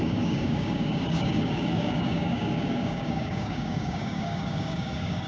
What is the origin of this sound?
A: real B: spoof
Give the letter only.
B